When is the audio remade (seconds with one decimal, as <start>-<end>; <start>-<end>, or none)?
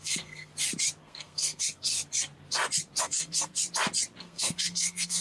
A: 0.0-0.5; 1.0-1.9; 3.0-3.6; 4.2-5.2